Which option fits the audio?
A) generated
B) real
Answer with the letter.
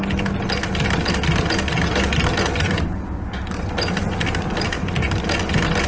B